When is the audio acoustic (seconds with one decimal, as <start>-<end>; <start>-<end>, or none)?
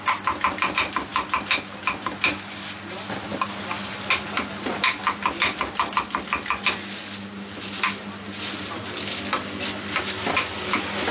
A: 0.0-11.1